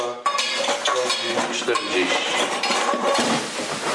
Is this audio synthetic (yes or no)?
no